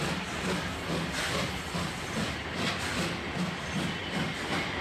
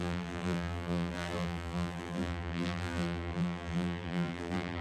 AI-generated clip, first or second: second